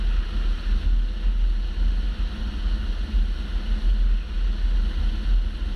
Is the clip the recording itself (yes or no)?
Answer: yes